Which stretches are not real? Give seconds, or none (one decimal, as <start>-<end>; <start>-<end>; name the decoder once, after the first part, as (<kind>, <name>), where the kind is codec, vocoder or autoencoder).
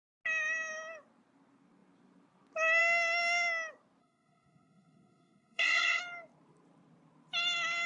4.0-6.0 (codec, SNAC)